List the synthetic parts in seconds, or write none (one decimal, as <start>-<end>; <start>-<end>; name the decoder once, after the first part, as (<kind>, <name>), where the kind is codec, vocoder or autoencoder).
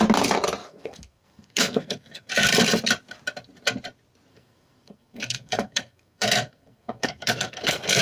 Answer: 0.6-2.3 (codec, SNAC); 4.3-8.0